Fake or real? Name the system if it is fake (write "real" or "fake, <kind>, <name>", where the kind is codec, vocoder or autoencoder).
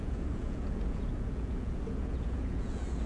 fake, vocoder, Vocos